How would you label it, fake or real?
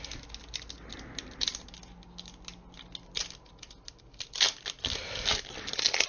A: real